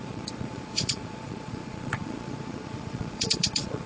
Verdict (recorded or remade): remade